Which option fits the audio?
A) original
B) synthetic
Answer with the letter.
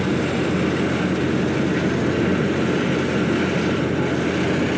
A